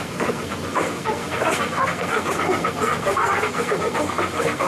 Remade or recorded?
remade